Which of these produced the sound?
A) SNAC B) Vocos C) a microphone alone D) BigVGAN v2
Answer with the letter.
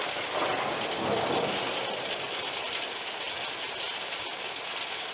C